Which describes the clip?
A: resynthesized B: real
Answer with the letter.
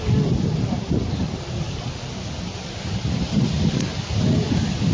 B